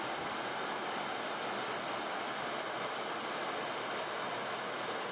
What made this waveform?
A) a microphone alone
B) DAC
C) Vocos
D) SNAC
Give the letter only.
A